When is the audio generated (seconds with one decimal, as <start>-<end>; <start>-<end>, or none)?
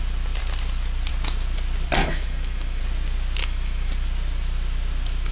2.0-2.8; 3.4-3.9